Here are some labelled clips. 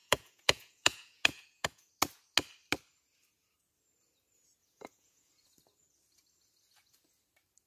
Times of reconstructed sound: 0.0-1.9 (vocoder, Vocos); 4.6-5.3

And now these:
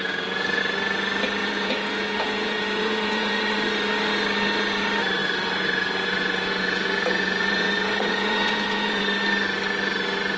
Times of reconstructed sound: 0.0-0.6 (vocoder, Vocos); 1.4-3.4; 5.2-9.0

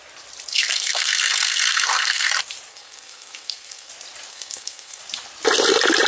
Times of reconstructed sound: 0.5-2.3 (codec, SNAC); 2.7-3.9; 4.3-5.0

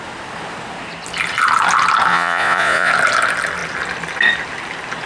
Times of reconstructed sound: 2.1-2.9 (vocoder, Vocos)

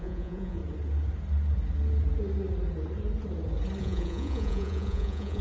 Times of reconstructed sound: 0.0-0.6 (vocoder, Vocos); 3.8-5.4

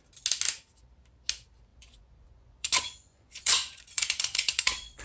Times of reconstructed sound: 1.7-5.0 (vocoder, Vocos)